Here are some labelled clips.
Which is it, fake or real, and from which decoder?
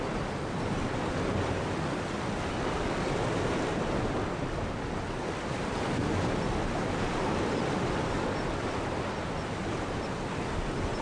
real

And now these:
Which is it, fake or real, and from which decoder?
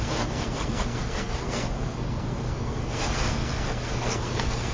fake, codec, SNAC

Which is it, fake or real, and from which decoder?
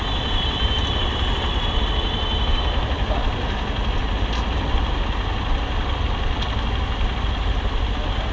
real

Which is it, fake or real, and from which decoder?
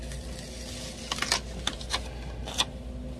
real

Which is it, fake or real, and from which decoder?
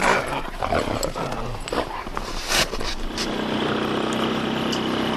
real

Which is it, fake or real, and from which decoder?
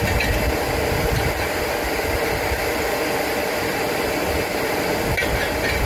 real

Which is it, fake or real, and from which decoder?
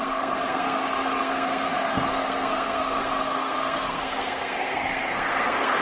fake, codec, SNAC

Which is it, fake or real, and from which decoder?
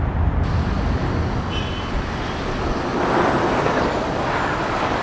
real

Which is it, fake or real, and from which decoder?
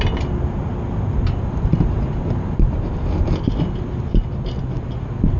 real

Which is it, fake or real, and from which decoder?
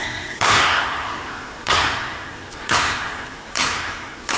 fake, codec, SNAC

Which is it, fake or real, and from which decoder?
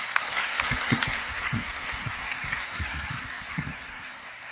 fake, codec, SNAC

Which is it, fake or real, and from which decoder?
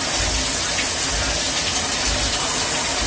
real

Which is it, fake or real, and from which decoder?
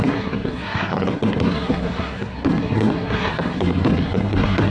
fake, codec, SNAC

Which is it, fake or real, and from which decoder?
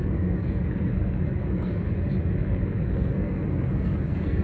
fake, codec, SNAC